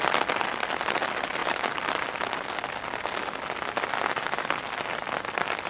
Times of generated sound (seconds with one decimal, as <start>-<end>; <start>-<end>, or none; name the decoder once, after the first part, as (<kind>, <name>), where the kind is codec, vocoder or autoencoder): none